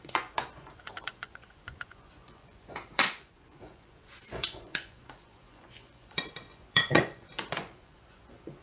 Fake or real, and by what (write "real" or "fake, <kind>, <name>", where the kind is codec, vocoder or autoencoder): fake, vocoder, Vocos